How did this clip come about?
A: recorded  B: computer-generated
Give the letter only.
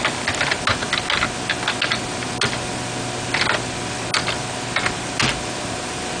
A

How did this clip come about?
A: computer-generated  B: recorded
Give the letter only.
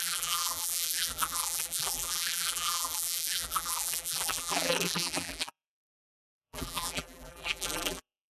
A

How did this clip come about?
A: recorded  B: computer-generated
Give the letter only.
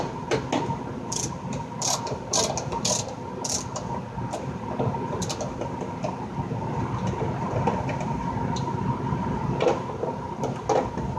A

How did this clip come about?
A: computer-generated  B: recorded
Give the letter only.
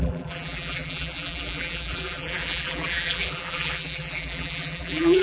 A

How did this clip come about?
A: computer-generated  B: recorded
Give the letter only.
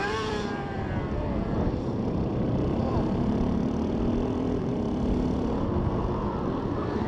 A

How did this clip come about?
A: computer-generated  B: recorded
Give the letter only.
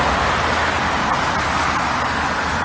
B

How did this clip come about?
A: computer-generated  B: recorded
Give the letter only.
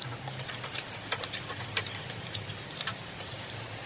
A